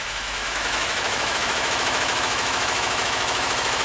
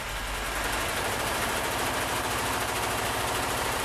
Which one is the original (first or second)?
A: second